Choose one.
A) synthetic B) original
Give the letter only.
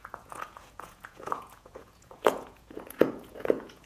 A